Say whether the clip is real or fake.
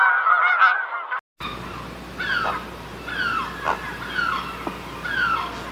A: real